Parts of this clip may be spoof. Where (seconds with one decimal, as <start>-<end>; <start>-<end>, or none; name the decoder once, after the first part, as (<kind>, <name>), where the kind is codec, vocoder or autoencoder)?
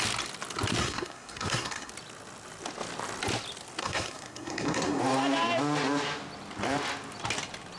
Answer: 0.8-1.9 (codec, SNAC); 3.8-5.0